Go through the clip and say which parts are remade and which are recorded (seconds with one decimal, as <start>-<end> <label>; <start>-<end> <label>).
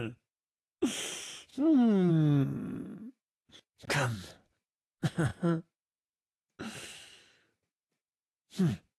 0.0-1.5 recorded; 1.5-2.1 remade; 2.1-9.0 recorded